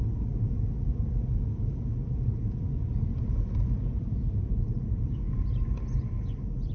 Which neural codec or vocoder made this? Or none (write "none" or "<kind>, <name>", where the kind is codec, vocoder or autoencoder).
none